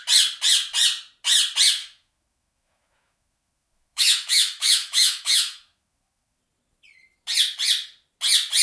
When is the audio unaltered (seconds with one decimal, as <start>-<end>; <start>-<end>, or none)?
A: 0.0-1.8; 6.4-8.6